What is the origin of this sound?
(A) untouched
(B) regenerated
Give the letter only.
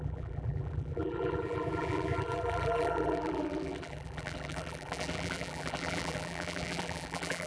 B